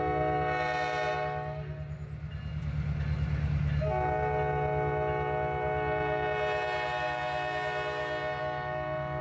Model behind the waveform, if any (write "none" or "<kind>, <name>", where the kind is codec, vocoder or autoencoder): none